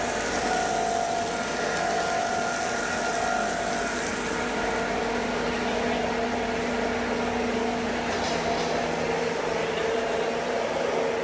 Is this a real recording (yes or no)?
yes